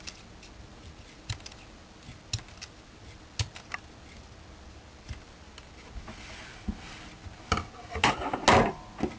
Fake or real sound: real